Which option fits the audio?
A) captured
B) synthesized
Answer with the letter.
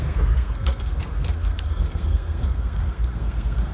B